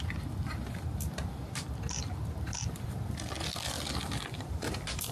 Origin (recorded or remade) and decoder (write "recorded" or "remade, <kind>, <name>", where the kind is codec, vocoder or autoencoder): remade, vocoder, BigVGAN v2